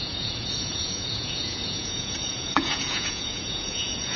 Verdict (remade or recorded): remade